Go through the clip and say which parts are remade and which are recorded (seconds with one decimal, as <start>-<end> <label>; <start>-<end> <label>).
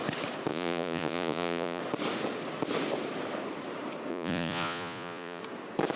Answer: 0.0-0.5 recorded; 0.5-1.8 remade; 1.8-4.1 recorded; 4.1-5.4 remade; 5.4-6.0 recorded